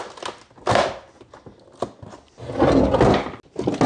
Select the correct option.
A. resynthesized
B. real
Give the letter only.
B